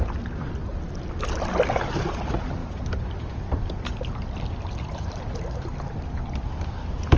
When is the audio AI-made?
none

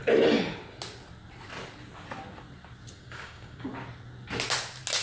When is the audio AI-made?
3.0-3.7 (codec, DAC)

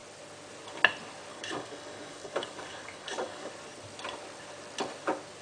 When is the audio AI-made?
1.3-3.5 (codec, DAC)